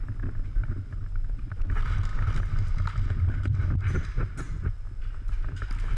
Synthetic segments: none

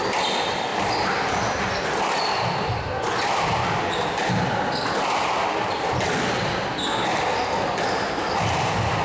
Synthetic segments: none